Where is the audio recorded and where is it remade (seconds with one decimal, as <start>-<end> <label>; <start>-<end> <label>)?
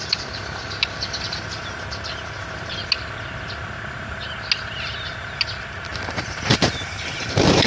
0.0-5.9 recorded; 5.9-7.7 remade